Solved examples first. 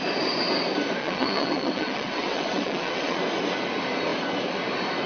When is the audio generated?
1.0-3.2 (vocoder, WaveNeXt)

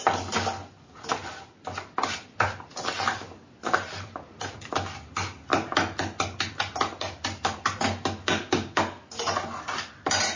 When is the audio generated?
8.2-8.8 (codec, DAC)

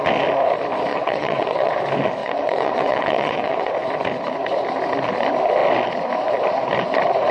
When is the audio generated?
0.9-1.8 (vocoder, WaveNeXt); 2.2-3.7